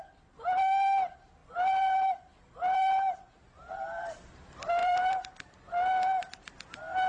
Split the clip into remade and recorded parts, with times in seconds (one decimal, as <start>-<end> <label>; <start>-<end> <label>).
0.0-1.4 recorded; 1.4-2.9 remade; 2.9-4.8 recorded; 4.8-5.7 remade; 5.7-7.1 recorded